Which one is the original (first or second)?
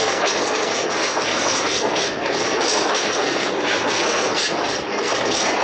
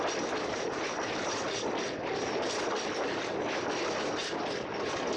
second